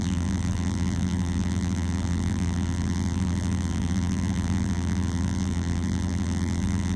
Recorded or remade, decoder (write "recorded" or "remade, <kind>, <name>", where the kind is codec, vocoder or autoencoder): remade, vocoder, BigVGAN v2